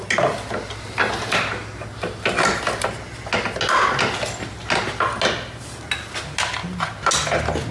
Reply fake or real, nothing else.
real